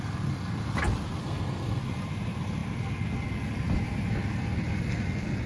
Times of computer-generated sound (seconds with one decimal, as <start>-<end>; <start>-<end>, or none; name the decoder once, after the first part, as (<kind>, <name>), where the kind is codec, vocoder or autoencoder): 1.2-1.8 (codec, SNAC)